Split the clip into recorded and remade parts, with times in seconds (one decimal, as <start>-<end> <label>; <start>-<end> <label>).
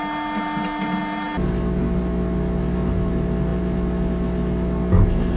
0.0-5.4 recorded